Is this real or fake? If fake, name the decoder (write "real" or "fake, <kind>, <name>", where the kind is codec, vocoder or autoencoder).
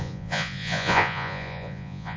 fake, vocoder, Vocos